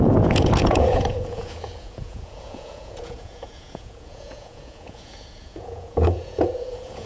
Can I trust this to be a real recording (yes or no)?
no